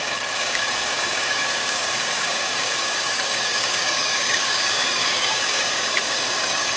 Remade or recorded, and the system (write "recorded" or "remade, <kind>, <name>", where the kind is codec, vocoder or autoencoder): remade, codec, DAC